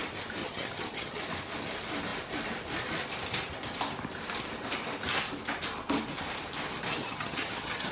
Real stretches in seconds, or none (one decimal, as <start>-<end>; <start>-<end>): 0.0-0.4; 1.2-6.9